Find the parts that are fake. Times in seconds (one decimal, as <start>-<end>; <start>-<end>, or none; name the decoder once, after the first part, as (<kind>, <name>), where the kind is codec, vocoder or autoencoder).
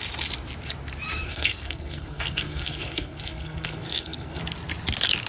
1.2-4.4 (codec, SNAC)